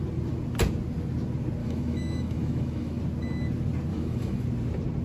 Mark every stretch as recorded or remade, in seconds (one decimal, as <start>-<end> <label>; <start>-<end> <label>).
0.0-1.6 recorded; 1.6-3.0 remade; 3.0-3.9 recorded; 3.9-4.4 remade; 4.4-5.0 recorded